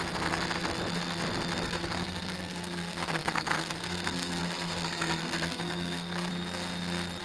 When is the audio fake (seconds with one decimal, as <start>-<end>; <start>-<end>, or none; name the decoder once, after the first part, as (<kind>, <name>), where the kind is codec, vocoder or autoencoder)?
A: 1.6-6.3 (codec, SNAC)